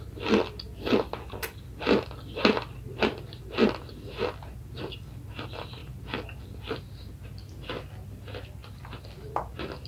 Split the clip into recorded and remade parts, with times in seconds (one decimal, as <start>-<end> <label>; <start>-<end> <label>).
0.0-9.9 recorded